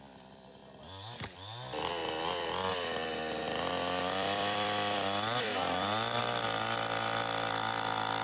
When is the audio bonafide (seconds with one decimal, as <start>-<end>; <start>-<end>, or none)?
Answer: 0.6-2.2; 2.7-3.4